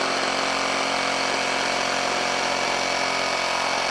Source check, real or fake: real